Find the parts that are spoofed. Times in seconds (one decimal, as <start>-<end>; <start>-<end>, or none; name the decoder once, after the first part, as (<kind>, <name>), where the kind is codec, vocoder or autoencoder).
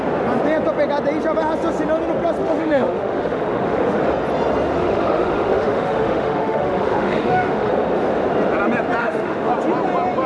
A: 2.4-4.0 (autoencoder, DAC-VAE); 4.8-7.7; 9.0-9.5